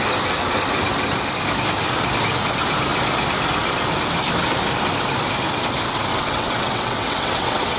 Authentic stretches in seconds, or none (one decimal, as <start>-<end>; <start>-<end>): 0.0-6.1